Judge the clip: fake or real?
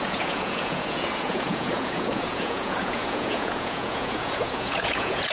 fake